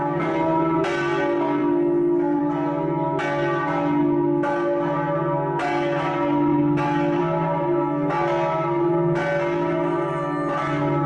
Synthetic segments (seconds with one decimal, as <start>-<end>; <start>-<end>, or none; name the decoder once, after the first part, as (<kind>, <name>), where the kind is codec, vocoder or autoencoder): none